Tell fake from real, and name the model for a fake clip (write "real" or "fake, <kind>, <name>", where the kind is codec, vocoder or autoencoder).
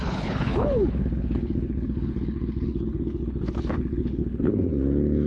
fake, codec, HILCodec